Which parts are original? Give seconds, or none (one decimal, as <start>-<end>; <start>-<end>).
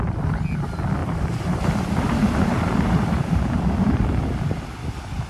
0.0-1.0; 4.2-5.3